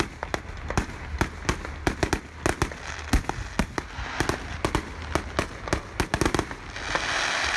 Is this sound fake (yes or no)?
no